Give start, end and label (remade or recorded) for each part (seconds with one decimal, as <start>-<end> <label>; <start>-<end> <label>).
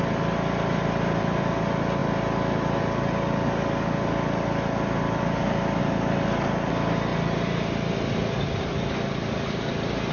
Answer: 0.0-10.1 recorded